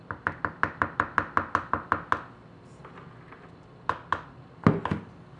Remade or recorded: recorded